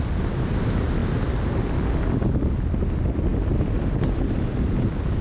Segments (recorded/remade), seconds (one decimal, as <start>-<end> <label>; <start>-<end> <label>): 0.0-5.2 recorded